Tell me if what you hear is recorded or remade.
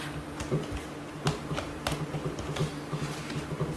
recorded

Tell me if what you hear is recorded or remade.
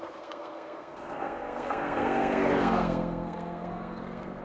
remade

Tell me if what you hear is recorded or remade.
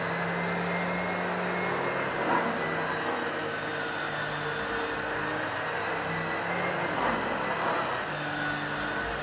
recorded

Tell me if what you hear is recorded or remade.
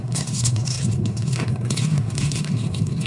remade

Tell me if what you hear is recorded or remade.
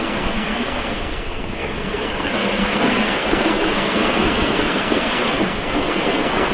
remade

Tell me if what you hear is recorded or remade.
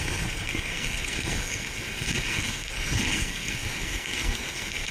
remade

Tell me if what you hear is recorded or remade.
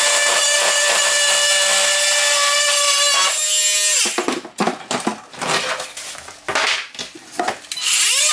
recorded